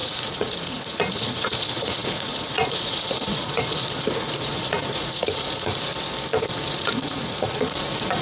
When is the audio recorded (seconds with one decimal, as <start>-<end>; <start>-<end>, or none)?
5.9-6.5